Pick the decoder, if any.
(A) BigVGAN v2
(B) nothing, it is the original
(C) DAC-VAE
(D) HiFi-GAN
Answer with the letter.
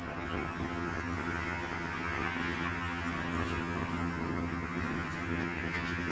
D